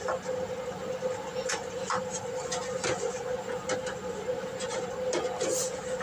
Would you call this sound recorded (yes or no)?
yes